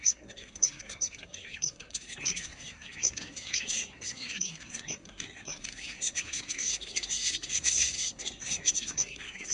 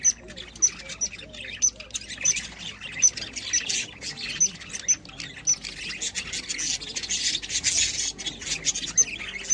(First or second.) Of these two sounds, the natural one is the second